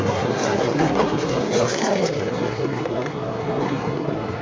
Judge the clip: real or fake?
fake